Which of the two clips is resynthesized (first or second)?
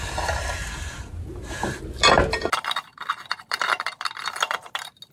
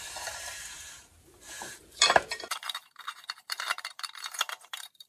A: second